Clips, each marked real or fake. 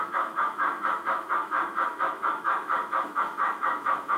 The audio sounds fake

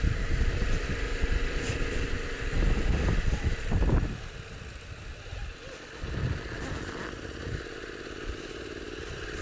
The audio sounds real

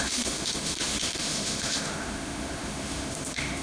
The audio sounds fake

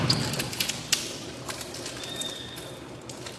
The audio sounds real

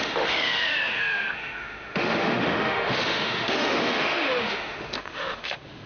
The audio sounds fake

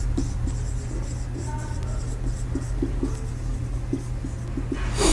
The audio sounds real